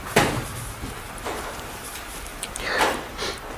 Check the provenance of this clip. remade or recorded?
remade